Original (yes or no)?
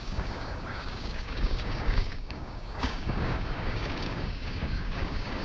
no